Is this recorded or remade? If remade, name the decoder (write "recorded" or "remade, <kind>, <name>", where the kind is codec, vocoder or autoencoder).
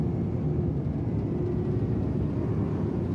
recorded